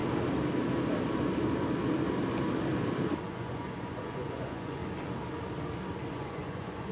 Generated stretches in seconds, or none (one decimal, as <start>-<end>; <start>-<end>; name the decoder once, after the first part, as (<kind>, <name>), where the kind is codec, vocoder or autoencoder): 3.2-4.8 (vocoder, Vocos); 6.1-6.9